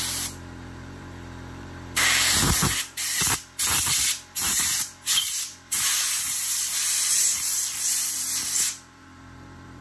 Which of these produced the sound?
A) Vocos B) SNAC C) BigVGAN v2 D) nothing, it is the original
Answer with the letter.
C